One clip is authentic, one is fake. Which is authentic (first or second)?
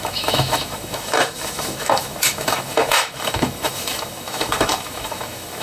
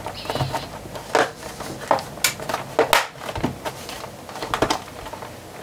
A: second